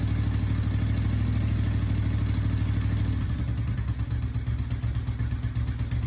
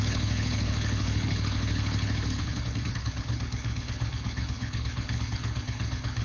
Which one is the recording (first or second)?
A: first